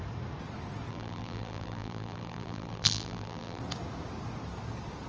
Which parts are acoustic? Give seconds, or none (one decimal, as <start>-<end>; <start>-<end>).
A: 0.0-0.9; 3.6-5.1